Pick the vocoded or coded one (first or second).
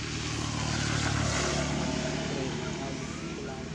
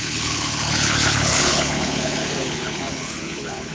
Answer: second